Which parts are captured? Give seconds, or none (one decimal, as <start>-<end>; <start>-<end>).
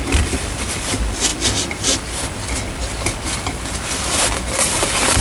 0.0-5.2